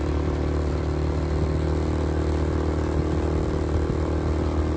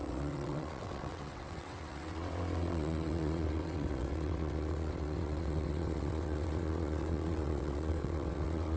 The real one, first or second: first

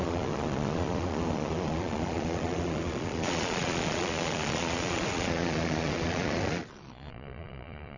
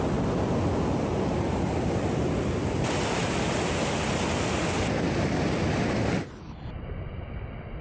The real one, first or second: second